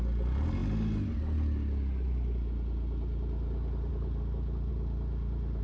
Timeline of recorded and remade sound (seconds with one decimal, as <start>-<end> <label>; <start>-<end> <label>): 0.0-5.6 recorded